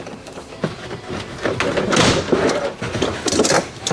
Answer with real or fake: real